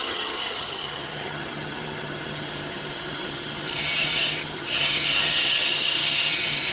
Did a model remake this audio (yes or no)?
yes